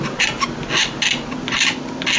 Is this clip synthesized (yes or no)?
no